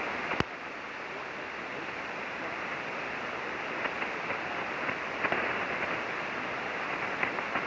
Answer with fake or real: real